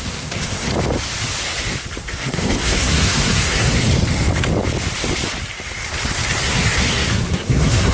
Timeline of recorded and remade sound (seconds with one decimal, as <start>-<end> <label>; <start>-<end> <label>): 0.0-0.7 remade; 0.7-2.0 recorded; 2.0-3.8 remade; 3.8-6.4 recorded; 6.4-7.9 remade